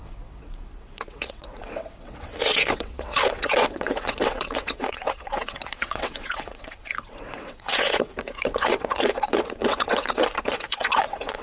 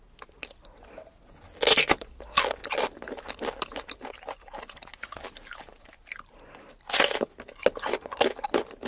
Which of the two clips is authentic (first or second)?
second